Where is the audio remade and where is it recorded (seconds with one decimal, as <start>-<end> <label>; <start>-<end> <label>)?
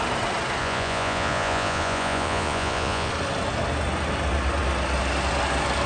0.0-0.6 recorded; 0.6-3.1 remade; 3.1-5.9 recorded